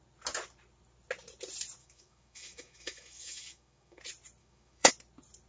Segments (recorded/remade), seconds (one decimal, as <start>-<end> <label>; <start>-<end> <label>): 0.0-1.8 recorded; 1.8-4.0 remade; 4.0-4.4 recorded; 4.4-4.9 remade; 4.9-5.5 recorded

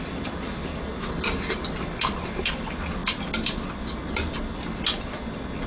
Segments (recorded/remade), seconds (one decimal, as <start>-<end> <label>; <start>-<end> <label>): 0.0-5.7 recorded